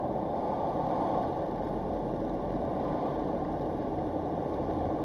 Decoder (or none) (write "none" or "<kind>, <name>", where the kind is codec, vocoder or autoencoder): vocoder, BigVGAN v2